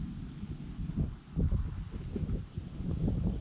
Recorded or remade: recorded